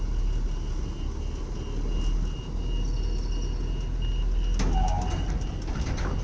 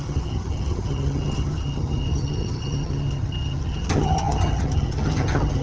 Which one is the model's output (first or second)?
second